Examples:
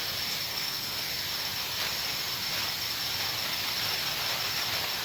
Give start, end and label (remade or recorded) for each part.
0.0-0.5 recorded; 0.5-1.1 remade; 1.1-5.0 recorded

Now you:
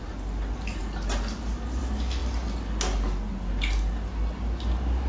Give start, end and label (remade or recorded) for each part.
0.0-5.1 recorded